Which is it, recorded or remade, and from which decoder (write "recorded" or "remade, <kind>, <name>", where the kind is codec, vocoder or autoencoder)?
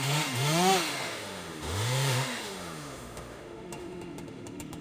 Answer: remade, autoencoder, DAC-VAE